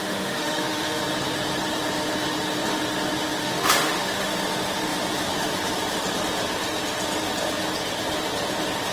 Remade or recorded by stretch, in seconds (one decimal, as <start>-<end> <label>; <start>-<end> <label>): 0.0-1.0 remade; 1.0-3.4 recorded; 3.4-4.3 remade; 4.3-8.9 recorded